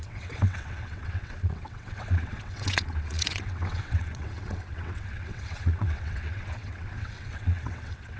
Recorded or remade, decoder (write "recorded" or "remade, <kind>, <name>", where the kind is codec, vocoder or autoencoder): remade, vocoder, WaveNeXt